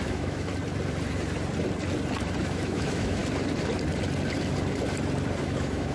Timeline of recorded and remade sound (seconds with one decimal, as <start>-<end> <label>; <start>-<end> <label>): 0.0-0.5 remade; 0.5-2.4 recorded; 2.4-3.2 remade; 3.2-5.4 recorded; 5.4-5.9 remade